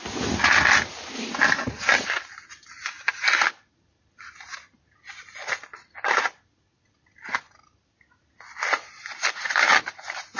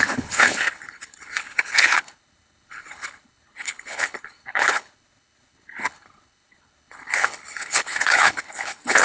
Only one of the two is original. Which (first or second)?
first